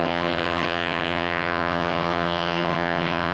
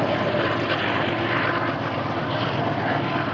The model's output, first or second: first